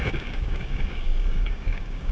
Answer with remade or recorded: remade